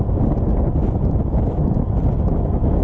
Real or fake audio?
real